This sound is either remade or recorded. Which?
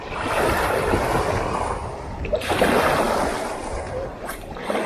recorded